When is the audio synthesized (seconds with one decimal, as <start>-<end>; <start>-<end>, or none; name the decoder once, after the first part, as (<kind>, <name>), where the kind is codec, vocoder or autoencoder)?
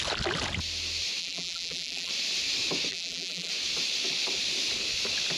1.2-2.1 (vocoder, BigVGAN v2); 2.9-3.5